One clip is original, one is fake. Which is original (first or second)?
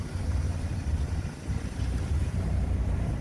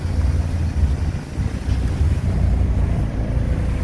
second